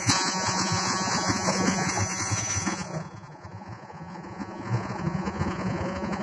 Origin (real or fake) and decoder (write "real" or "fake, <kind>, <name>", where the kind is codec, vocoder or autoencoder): fake, vocoder, Vocos